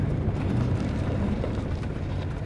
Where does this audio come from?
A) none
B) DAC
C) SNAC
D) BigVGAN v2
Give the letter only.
D